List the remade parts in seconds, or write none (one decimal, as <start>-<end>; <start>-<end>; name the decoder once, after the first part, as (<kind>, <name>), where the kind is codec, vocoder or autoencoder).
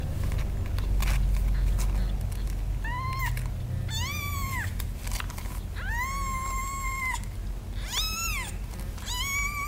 4.1-5.5 (vocoder, BigVGAN v2)